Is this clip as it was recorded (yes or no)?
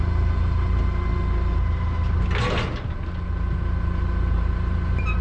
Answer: yes